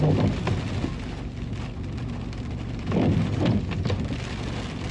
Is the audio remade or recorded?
recorded